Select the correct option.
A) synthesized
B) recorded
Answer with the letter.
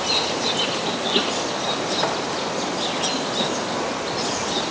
B